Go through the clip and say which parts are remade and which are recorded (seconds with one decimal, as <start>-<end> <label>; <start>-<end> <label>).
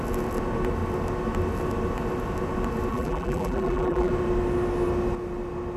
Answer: 0.0-2.9 recorded; 2.9-4.1 remade; 4.1-5.8 recorded